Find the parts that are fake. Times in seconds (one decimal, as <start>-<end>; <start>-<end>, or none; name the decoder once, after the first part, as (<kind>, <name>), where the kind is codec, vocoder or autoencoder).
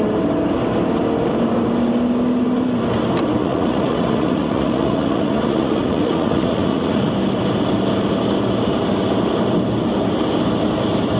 3.4-7.1 (vocoder, Vocos)